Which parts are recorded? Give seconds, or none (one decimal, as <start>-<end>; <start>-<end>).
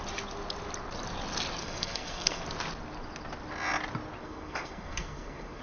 0.0-1.6; 2.4-4.2